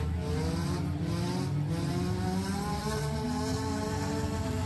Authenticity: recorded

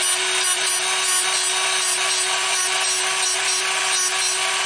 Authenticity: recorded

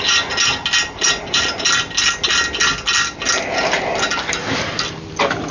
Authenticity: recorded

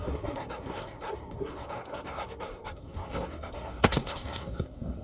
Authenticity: remade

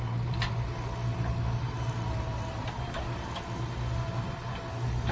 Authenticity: recorded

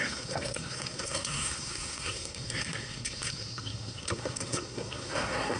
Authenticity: remade